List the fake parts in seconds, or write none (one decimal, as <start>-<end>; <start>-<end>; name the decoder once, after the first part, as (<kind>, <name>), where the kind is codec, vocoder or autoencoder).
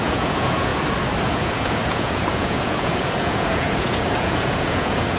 0.0-0.7 (vocoder, Vocos); 1.2-5.2